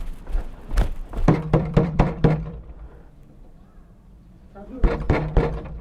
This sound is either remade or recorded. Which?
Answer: remade